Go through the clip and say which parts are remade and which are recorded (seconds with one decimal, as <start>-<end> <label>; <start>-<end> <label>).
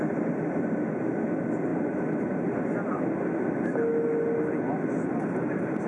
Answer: 0.0-5.9 recorded